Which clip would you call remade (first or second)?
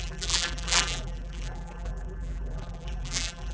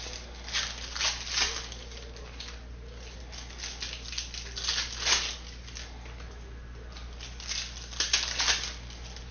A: first